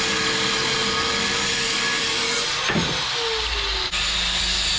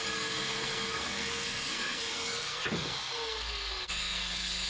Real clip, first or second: first